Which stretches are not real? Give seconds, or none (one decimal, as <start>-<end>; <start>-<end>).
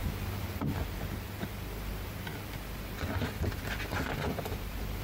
0.6-2.3; 4.4-5.0